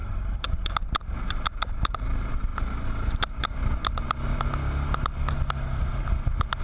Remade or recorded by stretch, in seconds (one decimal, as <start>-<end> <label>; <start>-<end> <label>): 0.0-0.7 remade; 0.7-6.6 recorded